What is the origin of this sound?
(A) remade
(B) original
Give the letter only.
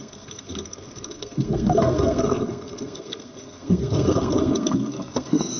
A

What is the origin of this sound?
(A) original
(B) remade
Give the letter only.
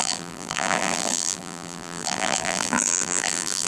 B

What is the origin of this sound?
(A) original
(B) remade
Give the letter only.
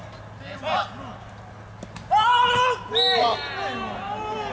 A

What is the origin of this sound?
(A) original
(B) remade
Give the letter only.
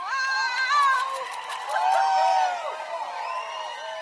A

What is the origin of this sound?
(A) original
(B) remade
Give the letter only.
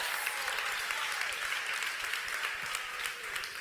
B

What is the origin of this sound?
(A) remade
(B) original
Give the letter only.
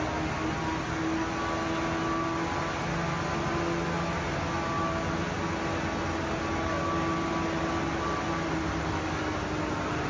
B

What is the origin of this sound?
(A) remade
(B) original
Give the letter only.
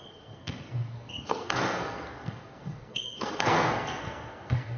A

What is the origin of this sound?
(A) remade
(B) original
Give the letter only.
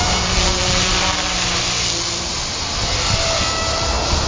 B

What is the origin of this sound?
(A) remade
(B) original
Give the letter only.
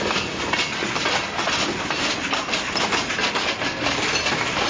B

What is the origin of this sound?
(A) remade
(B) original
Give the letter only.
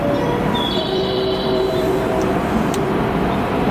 A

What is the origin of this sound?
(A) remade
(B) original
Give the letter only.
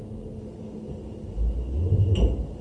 B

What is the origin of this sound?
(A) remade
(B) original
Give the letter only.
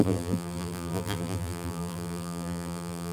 A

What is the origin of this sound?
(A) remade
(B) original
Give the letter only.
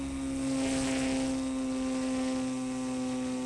B